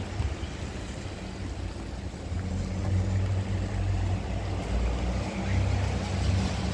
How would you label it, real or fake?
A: real